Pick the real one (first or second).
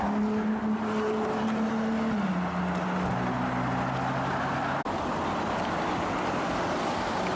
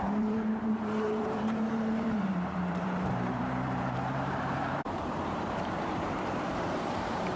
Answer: first